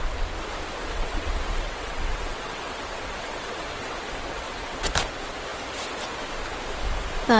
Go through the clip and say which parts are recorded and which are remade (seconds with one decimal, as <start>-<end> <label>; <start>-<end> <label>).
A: 0.0-0.8 recorded; 0.8-4.9 remade; 4.9-7.4 recorded